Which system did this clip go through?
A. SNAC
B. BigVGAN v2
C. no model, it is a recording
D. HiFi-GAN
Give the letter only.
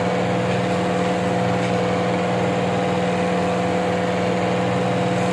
C